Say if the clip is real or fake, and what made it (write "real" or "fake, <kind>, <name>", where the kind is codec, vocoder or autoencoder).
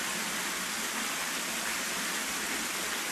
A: real